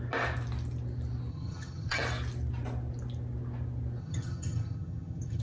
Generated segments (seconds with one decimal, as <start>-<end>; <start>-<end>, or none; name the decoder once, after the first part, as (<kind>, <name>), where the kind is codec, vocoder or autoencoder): 1.3-2.0 (vocoder, HiFi-GAN); 4.0-5.4